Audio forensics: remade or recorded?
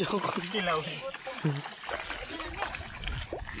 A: recorded